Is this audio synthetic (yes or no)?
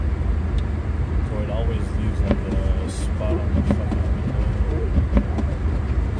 no